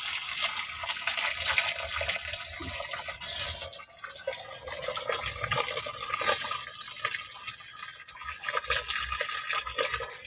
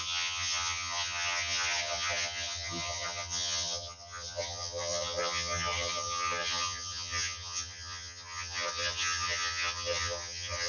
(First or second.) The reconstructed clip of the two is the second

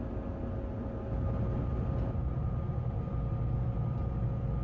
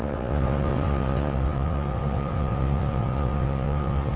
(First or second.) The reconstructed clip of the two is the second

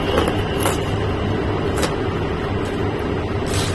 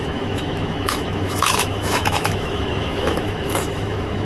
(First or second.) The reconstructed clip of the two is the second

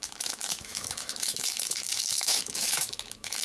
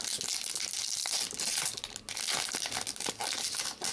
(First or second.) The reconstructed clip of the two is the first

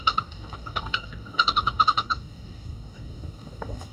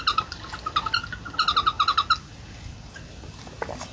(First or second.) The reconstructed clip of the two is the first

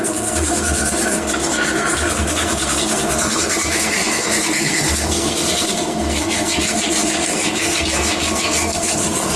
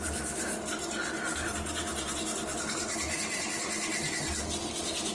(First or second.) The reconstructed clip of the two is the first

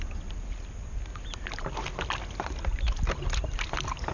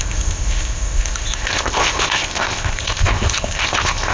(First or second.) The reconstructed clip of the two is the second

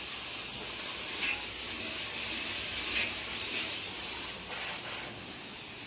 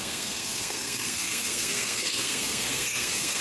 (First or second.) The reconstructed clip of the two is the second